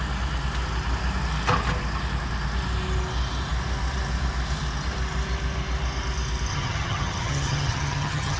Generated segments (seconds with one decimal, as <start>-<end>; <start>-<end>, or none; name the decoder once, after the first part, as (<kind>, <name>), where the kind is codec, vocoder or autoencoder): 6.5-8.4 (vocoder, HiFi-GAN)